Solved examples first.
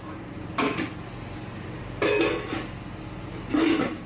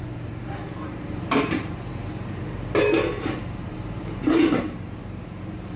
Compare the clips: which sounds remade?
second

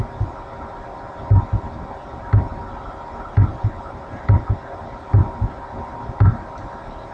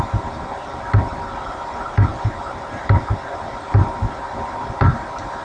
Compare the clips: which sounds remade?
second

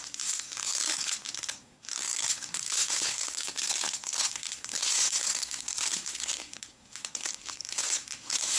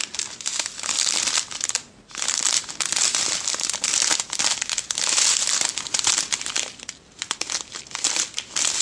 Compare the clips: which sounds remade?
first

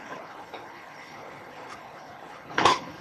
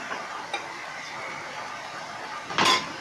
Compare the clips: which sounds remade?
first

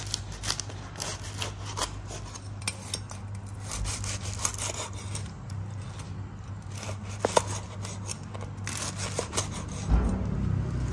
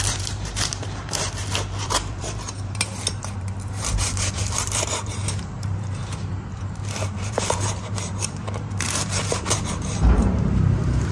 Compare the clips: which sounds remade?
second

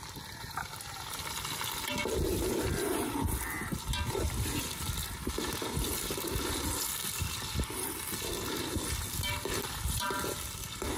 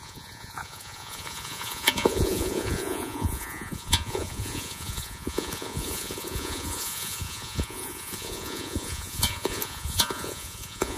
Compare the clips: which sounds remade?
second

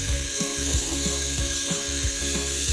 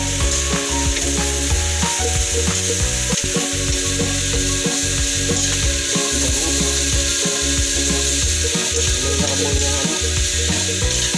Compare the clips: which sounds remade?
first